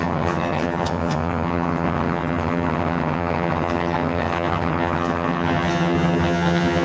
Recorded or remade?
remade